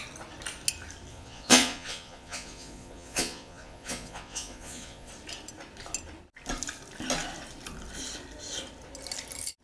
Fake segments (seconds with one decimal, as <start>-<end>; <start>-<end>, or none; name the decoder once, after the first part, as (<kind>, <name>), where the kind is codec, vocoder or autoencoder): 1.1-5.1 (vocoder, Vocos)